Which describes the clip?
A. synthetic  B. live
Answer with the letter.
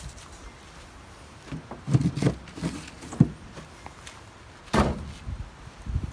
B